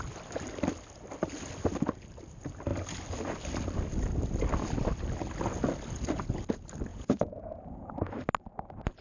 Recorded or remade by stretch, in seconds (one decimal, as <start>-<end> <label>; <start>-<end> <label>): 0.0-6.9 recorded; 6.9-7.9 remade; 7.9-9.0 recorded